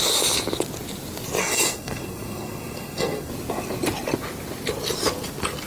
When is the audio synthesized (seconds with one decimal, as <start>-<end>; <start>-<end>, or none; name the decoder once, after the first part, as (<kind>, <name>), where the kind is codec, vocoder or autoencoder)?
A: 1.4-3.3 (codec, SNAC)